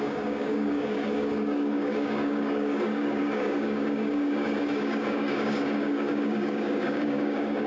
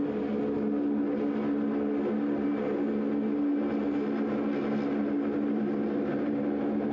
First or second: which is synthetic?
first